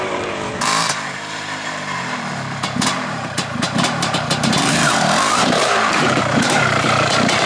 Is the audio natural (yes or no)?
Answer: no